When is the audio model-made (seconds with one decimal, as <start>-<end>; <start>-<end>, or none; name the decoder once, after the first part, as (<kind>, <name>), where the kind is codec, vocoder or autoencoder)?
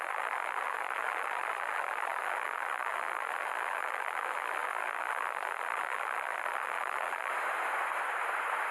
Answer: 0.0-7.3 (vocoder, BigVGAN v2)